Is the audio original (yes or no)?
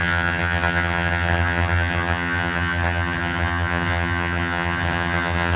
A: no